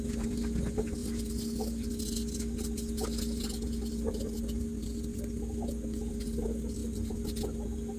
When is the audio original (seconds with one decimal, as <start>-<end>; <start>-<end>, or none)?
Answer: 0.0-8.0